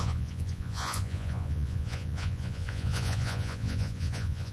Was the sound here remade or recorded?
remade